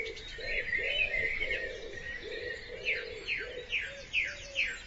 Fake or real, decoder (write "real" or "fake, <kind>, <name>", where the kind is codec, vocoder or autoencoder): real